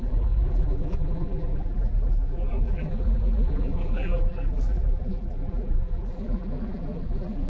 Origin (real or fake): fake